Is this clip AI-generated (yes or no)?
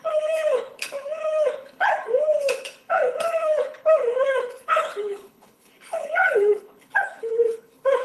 yes